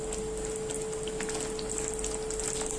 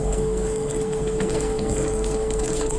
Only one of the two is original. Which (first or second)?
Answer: first